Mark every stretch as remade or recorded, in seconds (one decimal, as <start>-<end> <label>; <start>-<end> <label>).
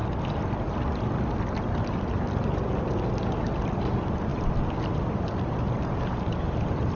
0.0-7.0 recorded